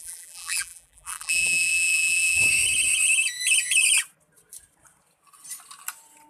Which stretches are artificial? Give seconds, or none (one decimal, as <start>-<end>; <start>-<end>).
0.0-2.4